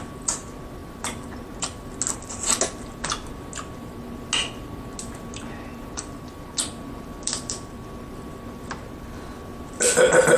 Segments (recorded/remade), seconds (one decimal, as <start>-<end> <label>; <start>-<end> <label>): 0.0-10.4 recorded